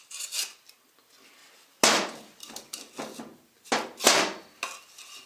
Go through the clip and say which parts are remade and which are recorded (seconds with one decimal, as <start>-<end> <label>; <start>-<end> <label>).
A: 0.0-5.3 recorded